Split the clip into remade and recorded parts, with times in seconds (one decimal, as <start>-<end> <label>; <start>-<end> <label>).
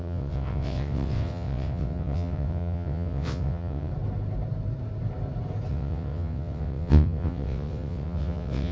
0.0-3.9 remade; 3.9-5.7 recorded; 5.7-8.7 remade